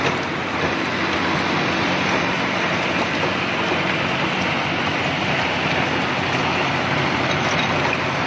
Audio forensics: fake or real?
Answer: real